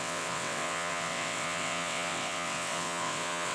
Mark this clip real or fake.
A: fake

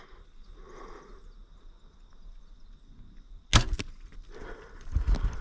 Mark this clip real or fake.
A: real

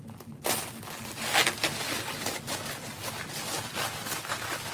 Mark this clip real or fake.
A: real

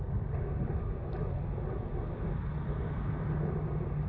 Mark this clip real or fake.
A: real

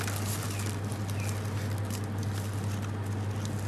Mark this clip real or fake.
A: real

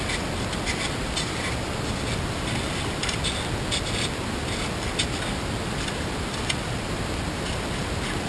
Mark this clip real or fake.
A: real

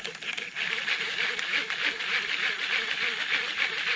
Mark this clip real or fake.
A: real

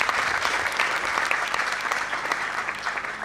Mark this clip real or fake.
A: fake